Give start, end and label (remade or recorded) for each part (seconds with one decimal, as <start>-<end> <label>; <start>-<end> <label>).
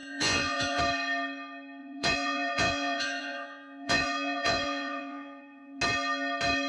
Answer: 0.0-0.8 remade; 0.8-1.8 recorded; 1.8-5.8 remade; 5.8-6.7 recorded